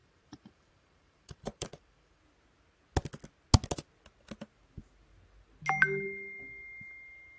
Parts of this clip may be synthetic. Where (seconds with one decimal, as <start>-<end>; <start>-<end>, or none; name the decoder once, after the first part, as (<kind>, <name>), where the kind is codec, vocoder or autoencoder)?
0.0-2.2 (vocoder, BigVGAN v2)

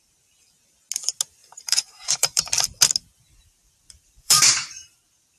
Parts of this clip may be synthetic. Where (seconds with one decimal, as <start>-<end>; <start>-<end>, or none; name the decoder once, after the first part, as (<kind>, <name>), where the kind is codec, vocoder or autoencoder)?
1.4-2.4 (vocoder, BigVGAN v2); 3.4-5.0